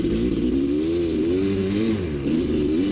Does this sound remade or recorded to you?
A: recorded